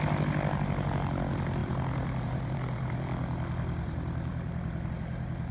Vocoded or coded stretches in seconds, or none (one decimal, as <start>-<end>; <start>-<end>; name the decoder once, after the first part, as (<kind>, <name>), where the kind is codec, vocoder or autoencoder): 1.6-4.9 (vocoder, BigVGAN v2)